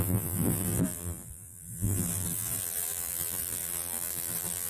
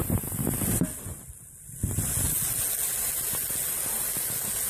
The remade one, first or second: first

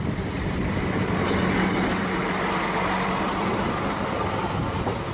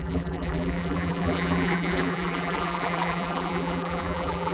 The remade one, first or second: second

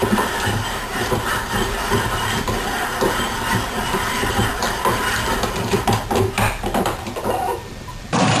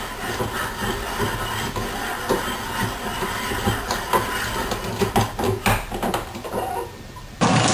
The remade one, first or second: first